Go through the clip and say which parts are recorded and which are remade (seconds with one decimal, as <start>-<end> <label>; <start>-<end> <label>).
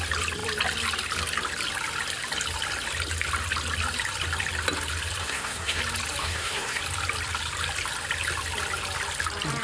0.0-5.2 recorded; 5.2-5.8 remade; 5.8-6.2 recorded; 6.2-6.8 remade; 6.8-9.6 recorded